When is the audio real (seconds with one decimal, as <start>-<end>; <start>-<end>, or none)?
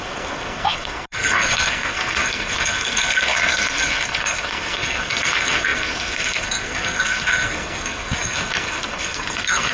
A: none